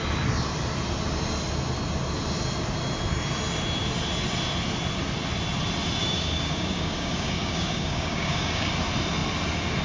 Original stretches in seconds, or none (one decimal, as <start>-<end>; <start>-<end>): 0.0-6.0; 8.7-9.8